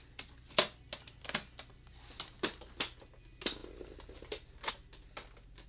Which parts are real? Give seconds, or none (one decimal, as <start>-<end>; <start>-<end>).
0.0-5.7